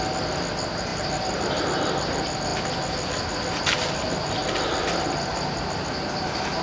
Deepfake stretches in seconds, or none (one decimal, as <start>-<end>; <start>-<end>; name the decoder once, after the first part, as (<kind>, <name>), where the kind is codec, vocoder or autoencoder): none